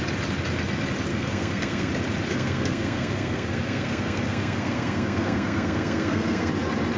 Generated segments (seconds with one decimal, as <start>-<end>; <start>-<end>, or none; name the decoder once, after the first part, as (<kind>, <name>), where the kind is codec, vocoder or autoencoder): 1.1-1.9 (codec, SNAC); 2.3-6.5